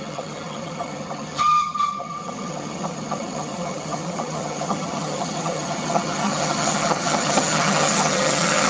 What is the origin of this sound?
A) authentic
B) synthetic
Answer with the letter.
B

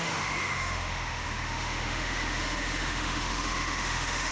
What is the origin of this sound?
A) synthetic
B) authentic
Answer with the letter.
A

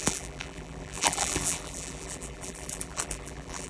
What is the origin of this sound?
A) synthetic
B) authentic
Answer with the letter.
A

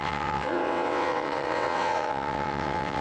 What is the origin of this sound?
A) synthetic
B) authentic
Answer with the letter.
A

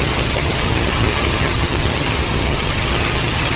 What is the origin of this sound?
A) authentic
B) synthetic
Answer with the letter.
B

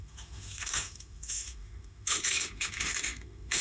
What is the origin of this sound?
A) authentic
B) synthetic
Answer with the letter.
B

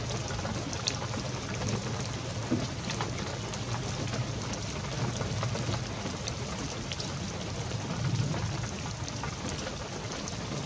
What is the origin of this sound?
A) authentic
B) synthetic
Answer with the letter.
A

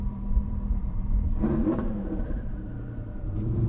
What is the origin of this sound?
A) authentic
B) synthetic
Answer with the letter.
B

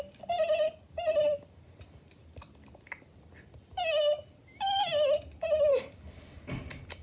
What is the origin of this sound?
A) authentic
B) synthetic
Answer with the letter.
A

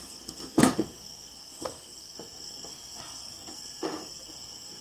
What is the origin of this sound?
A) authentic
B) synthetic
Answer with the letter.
B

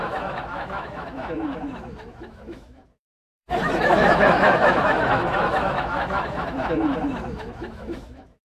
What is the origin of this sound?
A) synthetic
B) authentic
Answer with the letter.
A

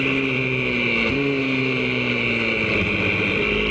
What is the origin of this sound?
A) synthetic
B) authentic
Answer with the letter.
B